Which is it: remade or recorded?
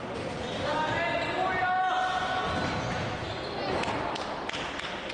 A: recorded